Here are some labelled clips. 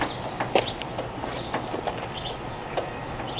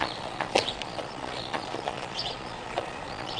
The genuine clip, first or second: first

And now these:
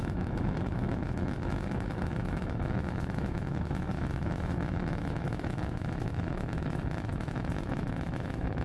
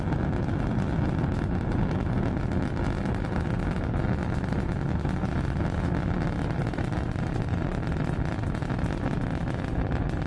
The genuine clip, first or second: second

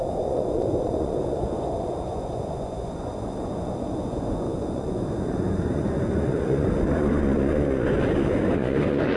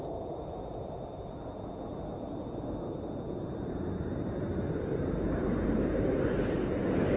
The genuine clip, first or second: second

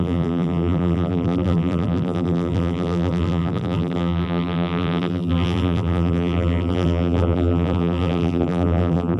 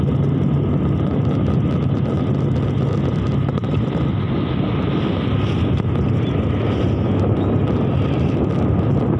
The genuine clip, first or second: second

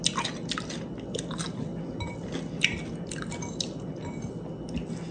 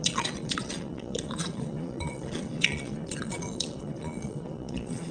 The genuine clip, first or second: first